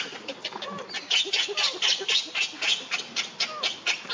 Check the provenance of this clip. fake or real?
real